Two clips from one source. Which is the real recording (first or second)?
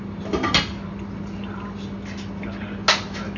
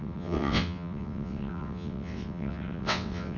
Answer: first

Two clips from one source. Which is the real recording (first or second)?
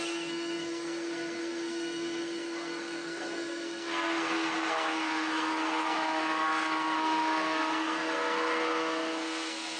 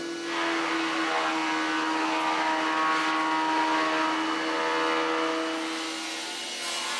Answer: second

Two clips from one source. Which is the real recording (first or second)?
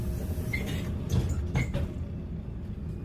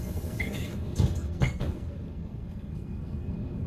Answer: first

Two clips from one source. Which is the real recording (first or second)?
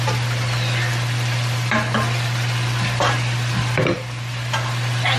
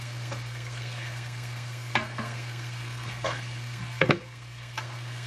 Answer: first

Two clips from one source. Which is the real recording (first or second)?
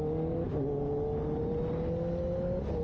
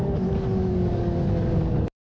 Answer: first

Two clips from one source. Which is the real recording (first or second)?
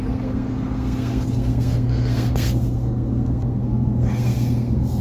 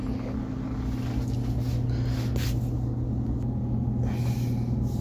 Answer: second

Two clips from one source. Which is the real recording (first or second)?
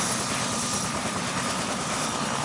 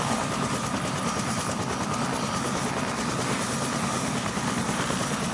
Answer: second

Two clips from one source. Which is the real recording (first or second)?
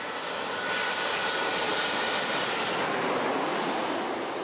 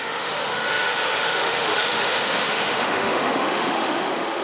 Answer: first